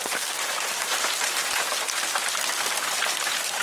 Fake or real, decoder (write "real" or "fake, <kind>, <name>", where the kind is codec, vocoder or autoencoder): real